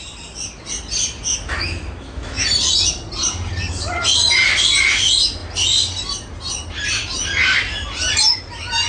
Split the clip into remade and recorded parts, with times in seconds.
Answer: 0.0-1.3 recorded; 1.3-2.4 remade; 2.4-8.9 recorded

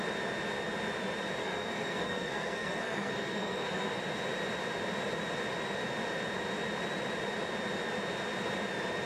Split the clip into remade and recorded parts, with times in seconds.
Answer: 0.0-1.4 recorded; 1.4-4.0 remade; 4.0-9.1 recorded

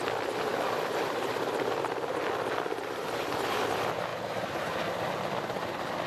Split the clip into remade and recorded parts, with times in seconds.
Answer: 0.0-6.1 recorded

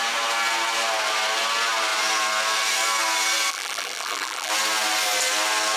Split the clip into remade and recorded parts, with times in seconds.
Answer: 0.0-3.5 recorded; 3.5-4.5 remade; 4.5-5.8 recorded